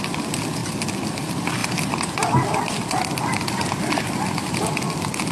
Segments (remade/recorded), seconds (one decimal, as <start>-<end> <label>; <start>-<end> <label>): 0.0-0.6 recorded; 0.6-1.1 remade; 1.1-1.6 recorded; 1.6-4.8 remade; 4.8-5.3 recorded